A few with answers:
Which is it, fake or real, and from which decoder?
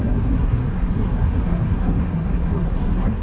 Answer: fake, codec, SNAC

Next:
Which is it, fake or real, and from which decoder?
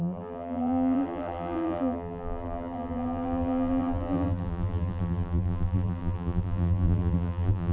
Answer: fake, vocoder, BigVGAN v2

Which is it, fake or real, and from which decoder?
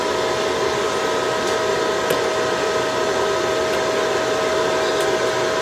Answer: real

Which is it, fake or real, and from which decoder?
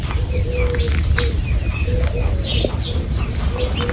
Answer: real